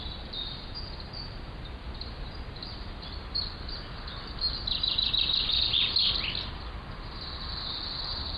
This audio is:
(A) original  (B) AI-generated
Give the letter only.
A